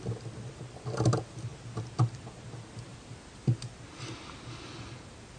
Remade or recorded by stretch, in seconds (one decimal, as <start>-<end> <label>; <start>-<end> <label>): 0.0-5.4 recorded